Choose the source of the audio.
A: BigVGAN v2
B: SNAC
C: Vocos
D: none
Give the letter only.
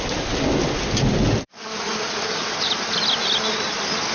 D